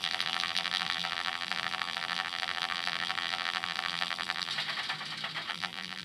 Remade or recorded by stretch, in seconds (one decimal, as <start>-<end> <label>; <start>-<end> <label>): 0.0-4.5 remade; 4.5-5.5 recorded; 5.5-6.0 remade